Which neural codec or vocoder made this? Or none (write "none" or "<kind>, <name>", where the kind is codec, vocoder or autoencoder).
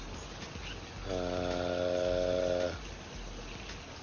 none